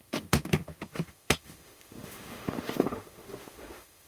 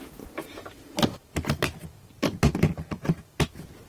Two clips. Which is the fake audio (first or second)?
first